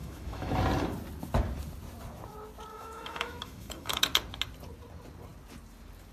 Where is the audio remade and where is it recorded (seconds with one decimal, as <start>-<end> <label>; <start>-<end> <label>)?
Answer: 0.0-0.6 remade; 0.6-2.7 recorded; 2.7-4.0 remade; 4.0-6.1 recorded